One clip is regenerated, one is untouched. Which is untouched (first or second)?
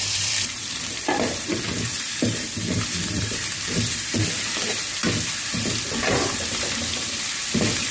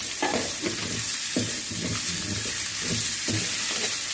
second